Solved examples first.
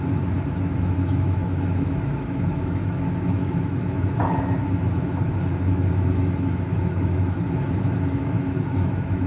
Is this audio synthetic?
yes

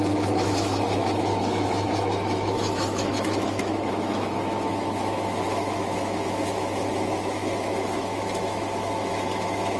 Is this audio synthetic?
yes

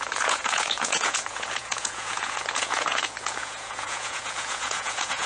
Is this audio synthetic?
yes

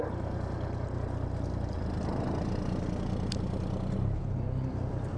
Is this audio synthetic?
no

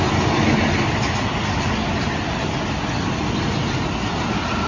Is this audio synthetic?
no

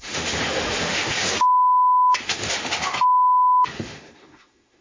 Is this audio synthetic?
yes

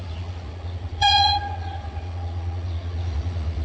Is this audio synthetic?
yes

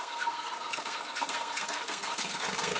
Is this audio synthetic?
yes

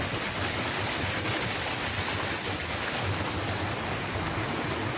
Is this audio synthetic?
no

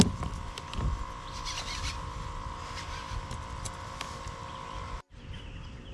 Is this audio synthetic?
no